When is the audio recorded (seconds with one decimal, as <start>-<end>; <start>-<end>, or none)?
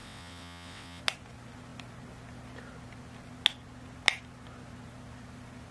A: 1.0-5.7